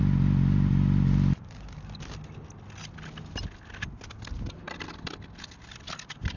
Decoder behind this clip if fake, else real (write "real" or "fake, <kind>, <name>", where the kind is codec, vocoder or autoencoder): real